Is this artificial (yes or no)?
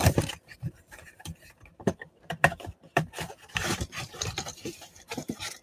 yes